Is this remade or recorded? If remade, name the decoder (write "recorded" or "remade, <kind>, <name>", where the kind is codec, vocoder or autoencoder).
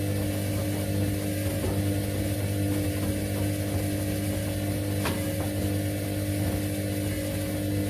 recorded